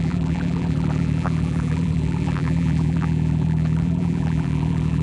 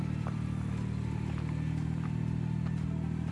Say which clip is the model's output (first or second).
first